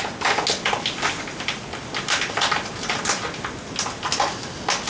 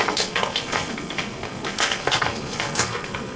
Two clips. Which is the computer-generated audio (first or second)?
second